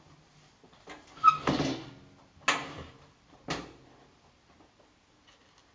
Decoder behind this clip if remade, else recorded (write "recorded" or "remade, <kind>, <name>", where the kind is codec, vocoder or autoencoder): recorded